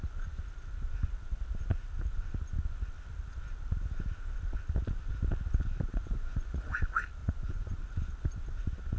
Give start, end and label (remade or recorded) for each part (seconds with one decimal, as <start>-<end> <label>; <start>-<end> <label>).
0.0-5.9 recorded; 5.9-6.8 remade; 6.8-7.2 recorded; 7.2-7.8 remade; 7.8-9.0 recorded